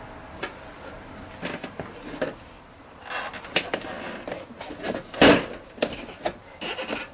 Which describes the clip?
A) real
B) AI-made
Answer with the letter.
A